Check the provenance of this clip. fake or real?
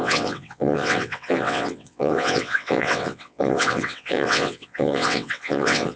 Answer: fake